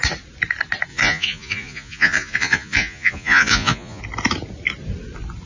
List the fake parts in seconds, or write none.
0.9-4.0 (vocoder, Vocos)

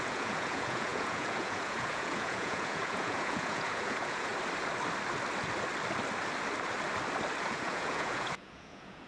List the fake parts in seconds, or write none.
0.0-4.3 (vocoder, Vocos); 7.4-9.1

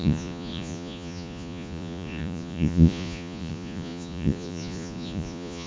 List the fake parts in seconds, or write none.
0.0-5.7 (vocoder, Vocos)

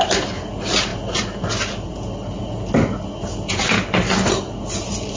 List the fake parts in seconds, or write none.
none

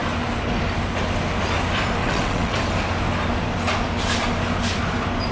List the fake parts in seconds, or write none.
2.0-2.6 (vocoder, WaveNeXt)

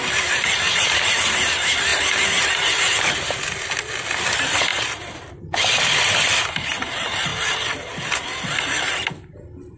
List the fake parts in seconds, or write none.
none

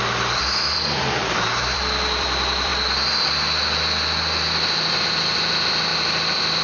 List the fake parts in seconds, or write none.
0.0-2.7 (vocoder, BigVGAN v2); 5.0-6.6

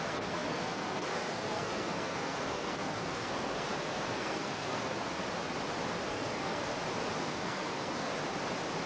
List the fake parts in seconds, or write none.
0.0-5.2 (codec, SNAC); 6.1-6.7; 7.2-8.1